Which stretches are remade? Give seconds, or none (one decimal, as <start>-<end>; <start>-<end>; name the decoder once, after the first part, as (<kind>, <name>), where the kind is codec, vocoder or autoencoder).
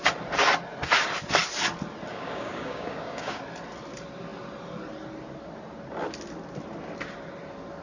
2.1-3.4 (codec, DAC)